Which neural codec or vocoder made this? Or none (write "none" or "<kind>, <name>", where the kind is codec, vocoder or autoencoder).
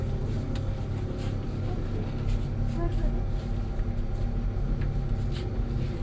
none